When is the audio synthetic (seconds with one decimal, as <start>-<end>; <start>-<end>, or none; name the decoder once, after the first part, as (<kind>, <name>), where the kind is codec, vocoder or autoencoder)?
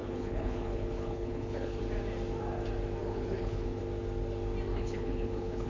0.0-1.8 (codec, HILCodec); 3.0-3.8; 4.7-5.7